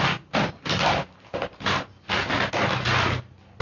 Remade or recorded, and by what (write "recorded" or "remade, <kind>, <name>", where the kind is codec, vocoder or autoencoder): recorded